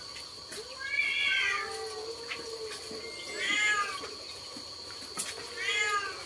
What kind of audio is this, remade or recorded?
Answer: recorded